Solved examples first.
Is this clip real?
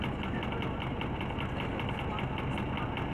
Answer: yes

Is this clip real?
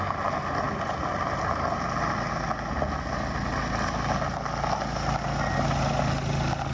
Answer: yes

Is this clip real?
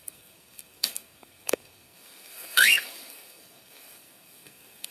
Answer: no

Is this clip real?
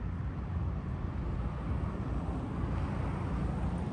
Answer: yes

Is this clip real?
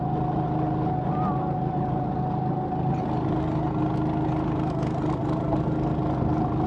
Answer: yes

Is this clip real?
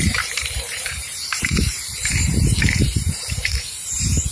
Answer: no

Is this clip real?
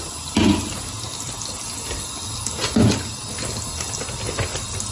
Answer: yes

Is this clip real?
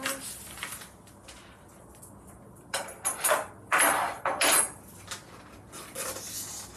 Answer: yes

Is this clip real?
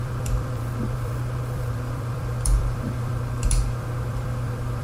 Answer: no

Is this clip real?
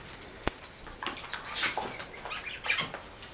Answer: yes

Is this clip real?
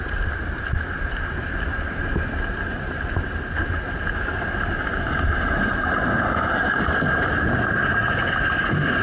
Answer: yes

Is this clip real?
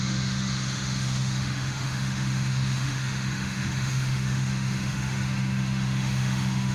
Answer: no